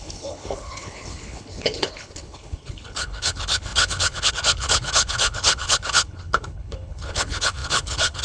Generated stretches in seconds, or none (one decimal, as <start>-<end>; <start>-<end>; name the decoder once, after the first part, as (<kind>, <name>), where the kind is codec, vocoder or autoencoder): 0.0-8.2 (codec, HILCodec)

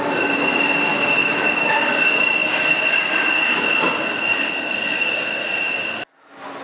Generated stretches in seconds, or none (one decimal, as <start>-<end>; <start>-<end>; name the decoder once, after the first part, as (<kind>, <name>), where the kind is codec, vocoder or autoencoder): 0.9-1.7 (autoencoder, DAC-VAE)

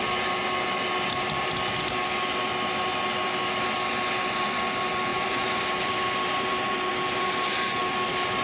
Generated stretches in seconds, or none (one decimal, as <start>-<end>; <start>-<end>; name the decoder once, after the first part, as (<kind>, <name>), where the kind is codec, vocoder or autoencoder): 5.1-5.9 (vocoder, BigVGAN v2)

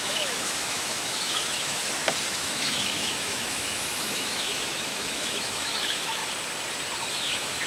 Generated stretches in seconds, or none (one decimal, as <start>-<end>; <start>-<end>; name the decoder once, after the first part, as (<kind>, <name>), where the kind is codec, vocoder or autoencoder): 0.0-1.8 (autoencoder, DAC-VAE); 2.3-6.2; 7.1-7.7